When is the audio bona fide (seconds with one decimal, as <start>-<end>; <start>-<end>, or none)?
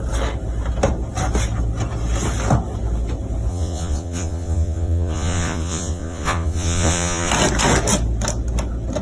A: 0.0-3.5; 7.3-9.0